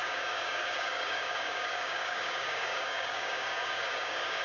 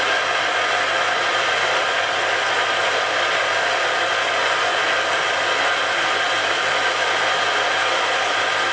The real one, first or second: second